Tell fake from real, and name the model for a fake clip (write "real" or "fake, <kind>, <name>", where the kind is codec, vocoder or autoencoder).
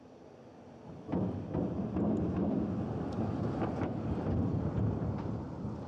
real